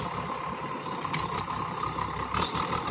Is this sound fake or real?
real